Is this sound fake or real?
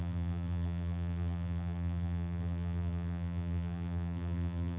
fake